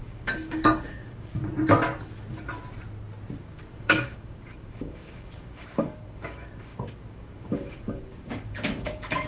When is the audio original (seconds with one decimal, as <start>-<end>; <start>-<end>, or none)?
1.4-3.4